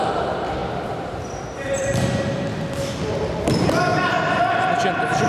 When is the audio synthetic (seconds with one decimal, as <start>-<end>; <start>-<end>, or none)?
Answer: 0.6-2.2; 3.9-4.4